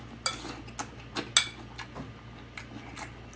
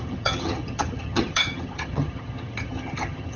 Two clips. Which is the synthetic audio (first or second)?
second